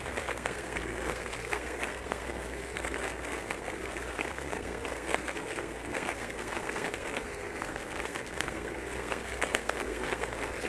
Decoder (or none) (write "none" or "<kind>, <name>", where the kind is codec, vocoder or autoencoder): codec, SNAC